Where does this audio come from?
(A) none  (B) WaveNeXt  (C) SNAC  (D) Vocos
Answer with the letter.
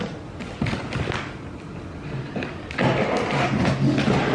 A